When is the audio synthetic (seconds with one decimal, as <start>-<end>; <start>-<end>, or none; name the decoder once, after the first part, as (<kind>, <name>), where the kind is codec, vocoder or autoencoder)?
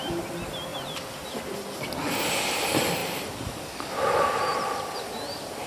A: none